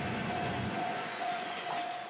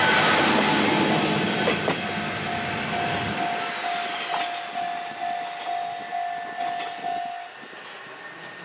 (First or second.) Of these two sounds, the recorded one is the second